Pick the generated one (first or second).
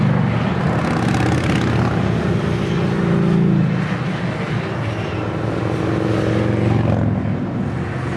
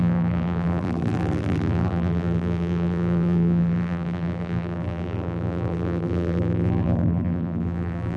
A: second